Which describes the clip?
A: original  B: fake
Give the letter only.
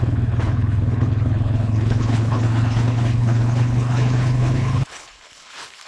B